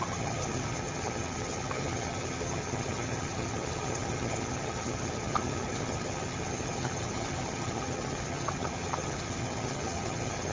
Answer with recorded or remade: remade